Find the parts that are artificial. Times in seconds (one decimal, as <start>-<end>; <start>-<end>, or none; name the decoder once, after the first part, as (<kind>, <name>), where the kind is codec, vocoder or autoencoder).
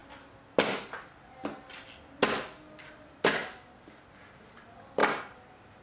none